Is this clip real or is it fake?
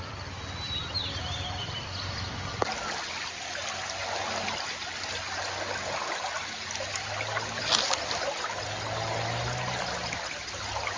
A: real